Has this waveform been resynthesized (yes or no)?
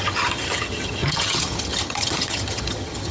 yes